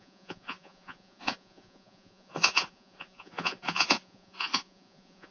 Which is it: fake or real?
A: fake